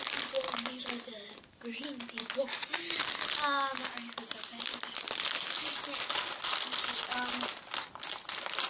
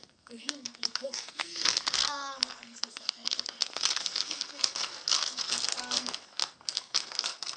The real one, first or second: first